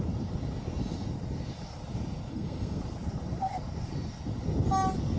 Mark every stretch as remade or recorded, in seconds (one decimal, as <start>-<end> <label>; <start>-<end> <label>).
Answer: 0.0-2.3 recorded; 2.3-2.8 remade; 2.8-5.2 recorded